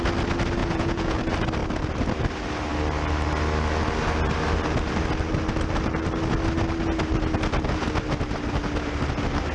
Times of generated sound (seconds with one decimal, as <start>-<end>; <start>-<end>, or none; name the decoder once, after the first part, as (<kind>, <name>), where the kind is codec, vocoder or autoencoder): 0.6-1.2 (vocoder, Vocos)